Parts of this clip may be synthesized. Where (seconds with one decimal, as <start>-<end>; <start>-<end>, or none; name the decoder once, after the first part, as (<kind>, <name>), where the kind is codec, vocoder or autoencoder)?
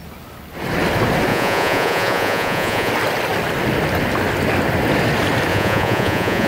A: 1.3-2.9 (vocoder, Vocos); 5.5-6.5